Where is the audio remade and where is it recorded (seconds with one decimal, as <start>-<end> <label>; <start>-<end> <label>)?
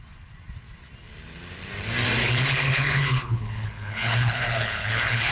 0.0-2.2 recorded; 2.2-5.3 remade